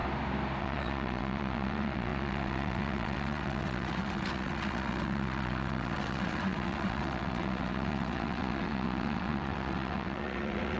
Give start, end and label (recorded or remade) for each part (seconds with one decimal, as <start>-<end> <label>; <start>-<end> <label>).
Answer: 0.0-0.6 recorded; 0.6-10.8 remade